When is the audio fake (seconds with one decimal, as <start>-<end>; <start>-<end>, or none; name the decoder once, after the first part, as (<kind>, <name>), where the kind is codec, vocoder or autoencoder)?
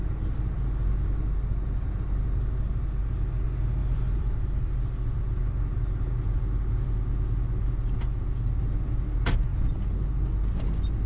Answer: 3.8-5.4 (vocoder, BigVGAN v2)